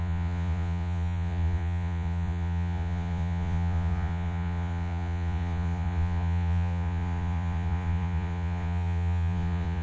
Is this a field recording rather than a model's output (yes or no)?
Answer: no